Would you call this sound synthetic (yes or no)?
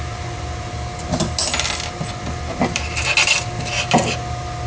no